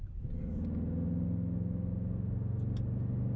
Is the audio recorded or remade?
recorded